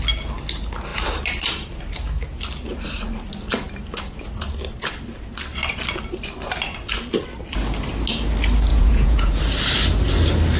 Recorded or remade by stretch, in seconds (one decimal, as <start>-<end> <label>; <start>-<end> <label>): 0.0-8.7 recorded; 8.7-9.4 remade; 9.4-10.6 recorded